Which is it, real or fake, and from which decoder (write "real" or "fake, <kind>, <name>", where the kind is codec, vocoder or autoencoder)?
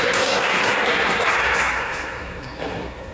fake, codec, SNAC